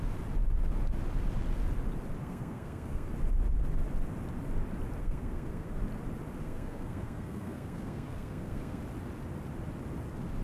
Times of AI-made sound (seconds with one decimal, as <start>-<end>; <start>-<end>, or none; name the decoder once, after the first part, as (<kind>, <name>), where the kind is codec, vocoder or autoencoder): 2.2-3.1 (codec, SNAC); 5.0-5.8; 6.4-8.8